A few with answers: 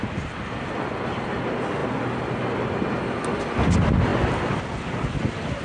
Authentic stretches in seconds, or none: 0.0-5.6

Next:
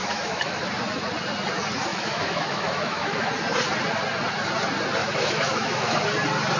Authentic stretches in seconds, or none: 0.6-1.9; 3.3-5.0; 6.0-6.6

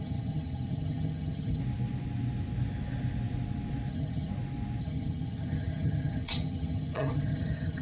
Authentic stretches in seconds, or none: 1.6-3.9; 4.3-4.8

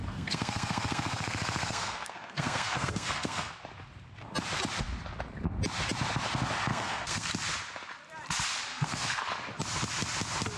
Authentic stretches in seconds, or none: 3.5-6.7; 7.3-8.7; 9.2-10.6